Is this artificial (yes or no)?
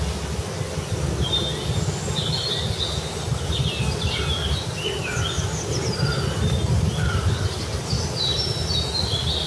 no